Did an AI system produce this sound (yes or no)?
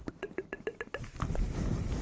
no